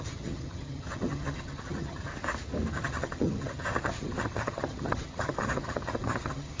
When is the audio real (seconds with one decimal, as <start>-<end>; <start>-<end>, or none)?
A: 2.1-2.7

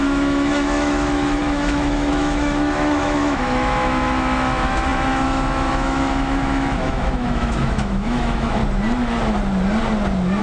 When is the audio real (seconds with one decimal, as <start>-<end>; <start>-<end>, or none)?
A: 8.6-10.4

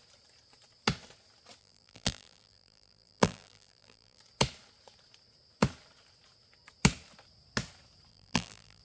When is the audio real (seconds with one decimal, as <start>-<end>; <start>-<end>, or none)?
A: 0.0-1.6; 4.2-8.1

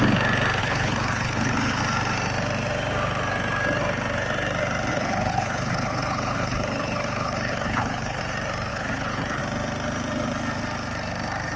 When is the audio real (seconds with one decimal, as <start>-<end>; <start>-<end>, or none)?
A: 0.0-0.6; 1.8-4.9; 8.2-8.7; 9.4-11.6

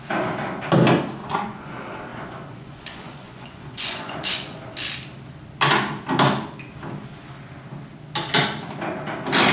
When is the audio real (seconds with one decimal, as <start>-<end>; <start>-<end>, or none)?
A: 0.0-1.2; 1.7-2.1; 4.6-9.5